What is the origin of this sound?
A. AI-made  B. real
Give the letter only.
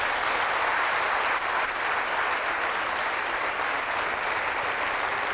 B